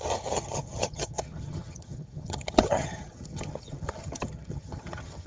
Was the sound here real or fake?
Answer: fake